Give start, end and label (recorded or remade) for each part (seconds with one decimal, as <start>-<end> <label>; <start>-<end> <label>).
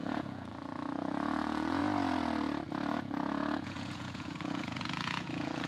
0.0-1.8 remade; 1.8-2.9 recorded; 2.9-5.7 remade